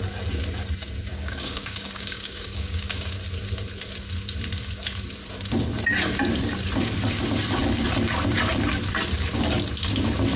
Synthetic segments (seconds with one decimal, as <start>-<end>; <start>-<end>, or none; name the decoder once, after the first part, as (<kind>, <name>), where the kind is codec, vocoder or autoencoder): 1.1-3.2 (codec, DAC)